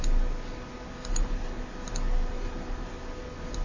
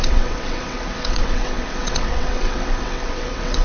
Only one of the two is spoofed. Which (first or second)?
second